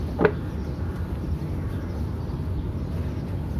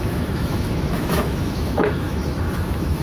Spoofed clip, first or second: second